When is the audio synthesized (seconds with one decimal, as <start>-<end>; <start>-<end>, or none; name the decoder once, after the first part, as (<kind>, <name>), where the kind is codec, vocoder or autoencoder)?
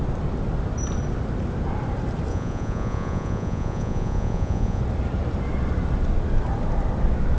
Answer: 2.3-4.8 (vocoder, Vocos)